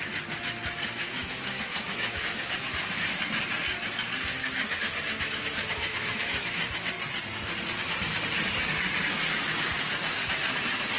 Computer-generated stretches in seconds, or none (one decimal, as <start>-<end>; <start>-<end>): 1.0-2.8; 4.4-6.9